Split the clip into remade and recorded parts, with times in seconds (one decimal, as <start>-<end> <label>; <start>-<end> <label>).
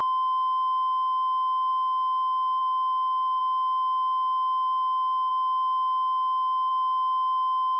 0.0-2.6 recorded; 2.6-3.4 remade; 3.4-7.8 recorded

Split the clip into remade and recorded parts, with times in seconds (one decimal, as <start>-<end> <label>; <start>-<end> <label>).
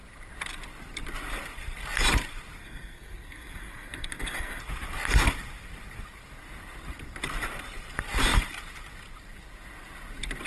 0.0-2.6 recorded; 2.6-4.6 remade; 4.6-10.5 recorded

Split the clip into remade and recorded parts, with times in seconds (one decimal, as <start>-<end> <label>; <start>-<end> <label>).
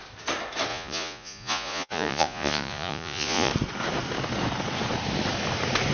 0.0-0.7 recorded; 0.7-3.5 remade; 3.5-5.9 recorded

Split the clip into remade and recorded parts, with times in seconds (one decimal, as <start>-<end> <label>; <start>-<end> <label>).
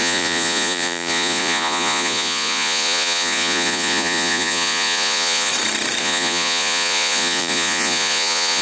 0.0-5.5 remade; 5.5-6.0 recorded; 6.0-8.6 remade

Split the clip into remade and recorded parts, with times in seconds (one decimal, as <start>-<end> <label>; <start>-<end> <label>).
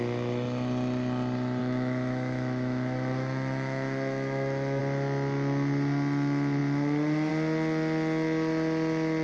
0.0-1.6 recorded; 1.6-4.8 remade; 4.8-9.2 recorded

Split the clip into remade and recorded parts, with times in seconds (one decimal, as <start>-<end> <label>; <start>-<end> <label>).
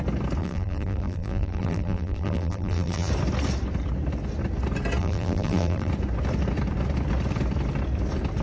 0.0-0.4 recorded; 0.4-3.1 remade; 3.1-5.0 recorded; 5.0-5.9 remade; 5.9-8.4 recorded